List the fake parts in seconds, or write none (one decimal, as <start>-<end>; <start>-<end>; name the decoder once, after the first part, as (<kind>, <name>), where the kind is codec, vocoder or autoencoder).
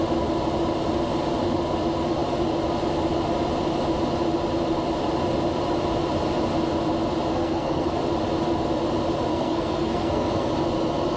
7.3-8.0 (codec, SNAC); 9.3-10.5